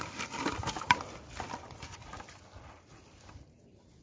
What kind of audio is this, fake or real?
real